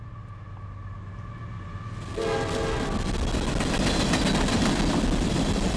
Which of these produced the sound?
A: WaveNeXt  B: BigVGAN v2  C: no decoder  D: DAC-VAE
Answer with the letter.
C